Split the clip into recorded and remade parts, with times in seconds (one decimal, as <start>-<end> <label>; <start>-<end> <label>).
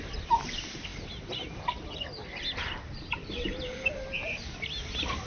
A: 0.0-5.3 recorded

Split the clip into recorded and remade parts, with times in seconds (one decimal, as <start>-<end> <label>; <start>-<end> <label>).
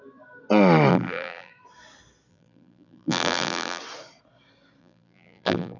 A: 0.0-0.9 recorded; 0.9-1.5 remade; 1.5-2.3 recorded; 2.3-3.8 remade; 3.8-4.8 recorded; 4.8-5.8 remade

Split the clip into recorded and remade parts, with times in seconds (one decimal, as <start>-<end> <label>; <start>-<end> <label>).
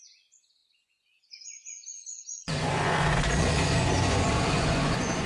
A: 0.0-5.3 remade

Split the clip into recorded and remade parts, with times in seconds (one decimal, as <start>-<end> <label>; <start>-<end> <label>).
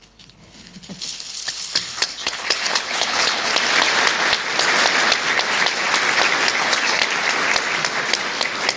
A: 0.0-3.5 remade; 3.5-6.6 recorded; 6.6-7.0 remade; 7.0-8.8 recorded